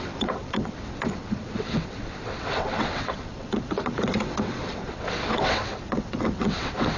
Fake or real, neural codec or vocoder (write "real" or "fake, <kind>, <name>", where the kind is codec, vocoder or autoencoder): fake, vocoder, WaveNeXt